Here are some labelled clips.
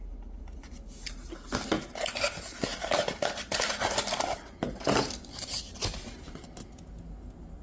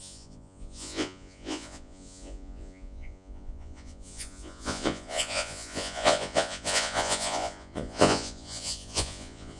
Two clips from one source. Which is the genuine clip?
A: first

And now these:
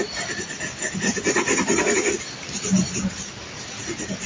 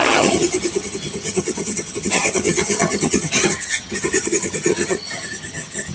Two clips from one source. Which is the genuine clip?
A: first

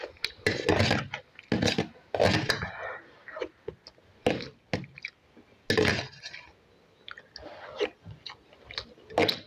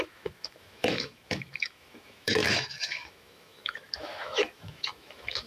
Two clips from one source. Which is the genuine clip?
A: first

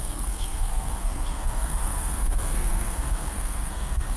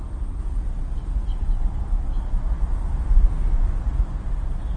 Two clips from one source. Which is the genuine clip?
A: second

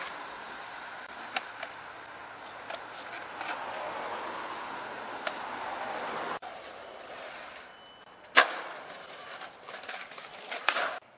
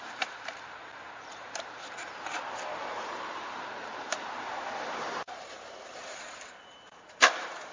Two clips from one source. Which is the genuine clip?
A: first